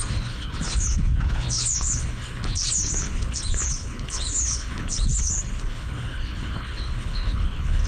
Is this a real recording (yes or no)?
no